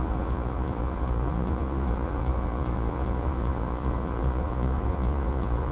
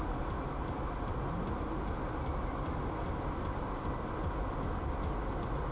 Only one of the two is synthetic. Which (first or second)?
first